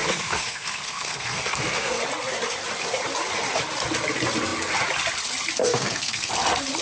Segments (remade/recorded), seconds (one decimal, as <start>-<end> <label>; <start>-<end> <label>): 0.0-1.9 remade; 1.9-5.6 recorded; 5.6-6.3 remade; 6.3-6.8 recorded